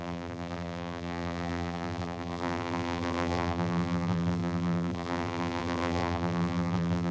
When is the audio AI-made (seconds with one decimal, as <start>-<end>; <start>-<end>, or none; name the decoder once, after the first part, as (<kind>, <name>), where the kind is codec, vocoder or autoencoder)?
0.0-7.1 (vocoder, BigVGAN v2)